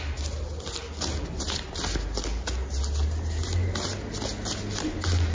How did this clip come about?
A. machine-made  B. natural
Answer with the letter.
B